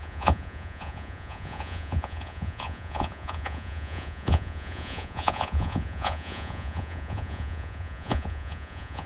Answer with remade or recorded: remade